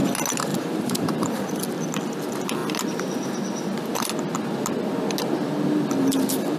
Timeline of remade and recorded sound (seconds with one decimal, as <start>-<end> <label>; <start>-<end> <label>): 0.0-0.5 recorded; 0.5-1.6 remade; 1.6-6.6 recorded

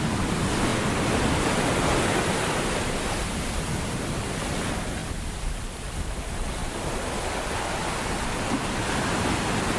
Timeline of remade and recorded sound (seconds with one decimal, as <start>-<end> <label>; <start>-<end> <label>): 0.0-5.0 recorded; 5.0-5.7 remade; 5.7-6.6 recorded; 6.6-8.2 remade; 8.2-9.8 recorded